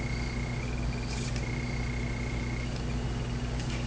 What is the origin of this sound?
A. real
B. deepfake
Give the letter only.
A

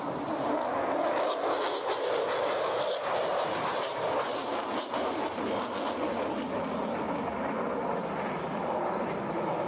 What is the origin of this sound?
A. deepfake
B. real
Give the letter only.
B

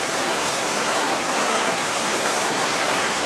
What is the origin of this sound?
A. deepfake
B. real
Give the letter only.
A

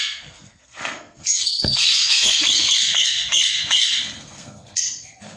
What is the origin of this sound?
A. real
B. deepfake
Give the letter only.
B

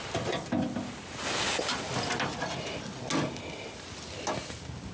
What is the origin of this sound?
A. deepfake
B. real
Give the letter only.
B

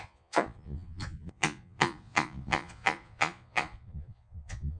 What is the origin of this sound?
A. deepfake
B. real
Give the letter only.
A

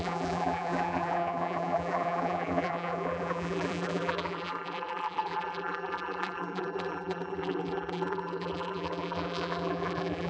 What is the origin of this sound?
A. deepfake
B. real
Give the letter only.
A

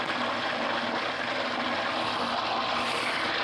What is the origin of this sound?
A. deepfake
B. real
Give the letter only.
B